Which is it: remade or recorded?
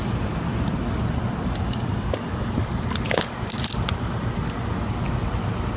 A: recorded